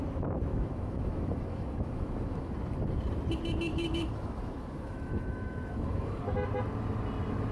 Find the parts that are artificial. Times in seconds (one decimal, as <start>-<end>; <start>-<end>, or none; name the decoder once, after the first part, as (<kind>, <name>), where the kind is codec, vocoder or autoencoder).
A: 0.5-2.5 (autoencoder, DAC-VAE); 3.7-6.2

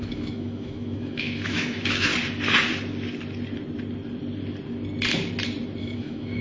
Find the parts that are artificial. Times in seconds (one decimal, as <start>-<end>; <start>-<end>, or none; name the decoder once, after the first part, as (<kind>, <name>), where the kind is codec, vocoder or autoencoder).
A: 0.0-2.1 (autoencoder, DAC-VAE); 5.8-6.4

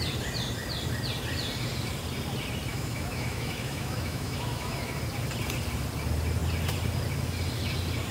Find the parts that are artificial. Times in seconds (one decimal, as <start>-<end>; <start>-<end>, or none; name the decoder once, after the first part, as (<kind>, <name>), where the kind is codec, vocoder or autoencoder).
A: 2.7-5.0 (autoencoder, DAC-VAE)